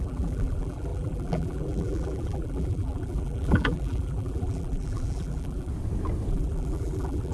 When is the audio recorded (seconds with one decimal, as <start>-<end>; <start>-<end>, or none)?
5.7-6.3